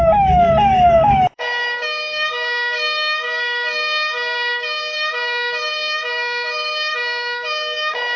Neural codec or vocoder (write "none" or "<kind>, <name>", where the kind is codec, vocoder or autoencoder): codec, DAC